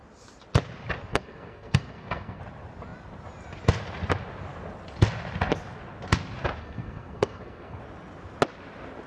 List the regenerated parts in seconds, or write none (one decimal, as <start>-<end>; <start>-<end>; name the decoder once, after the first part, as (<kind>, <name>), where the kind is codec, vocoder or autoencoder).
1.1-2.4 (codec, SNAC); 6.6-7.8